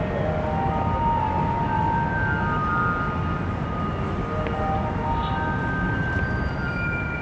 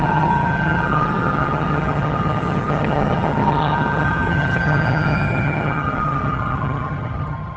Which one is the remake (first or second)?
second